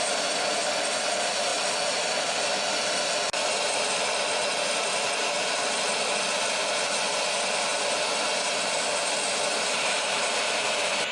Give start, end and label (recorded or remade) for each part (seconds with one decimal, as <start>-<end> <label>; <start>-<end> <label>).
0.0-11.1 recorded